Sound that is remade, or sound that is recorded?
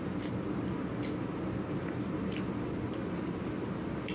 recorded